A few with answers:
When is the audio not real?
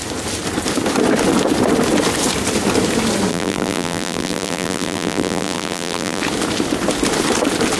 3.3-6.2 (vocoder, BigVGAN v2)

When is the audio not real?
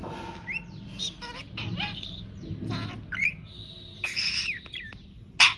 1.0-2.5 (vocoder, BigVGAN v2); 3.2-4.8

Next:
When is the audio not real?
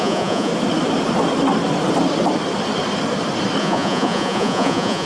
0.0-0.5 (vocoder, Vocos); 3.6-5.1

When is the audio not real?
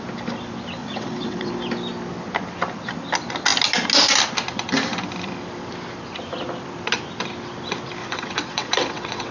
0.8-1.5 (vocoder, WaveNeXt); 8.0-9.3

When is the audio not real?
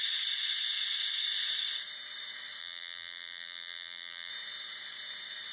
2.6-4.3 (vocoder, BigVGAN v2)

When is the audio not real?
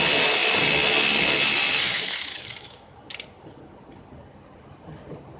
1.8-3.1 (autoencoder, DAC-VAE)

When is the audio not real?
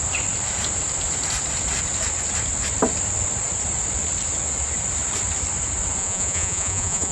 6.0-7.1 (vocoder, Vocos)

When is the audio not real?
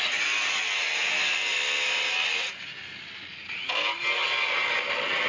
none